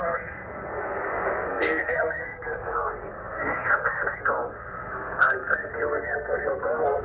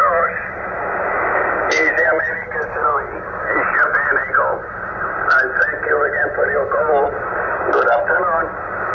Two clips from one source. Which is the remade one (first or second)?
first